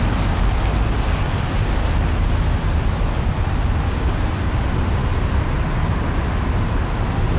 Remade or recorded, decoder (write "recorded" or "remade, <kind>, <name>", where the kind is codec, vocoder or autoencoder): recorded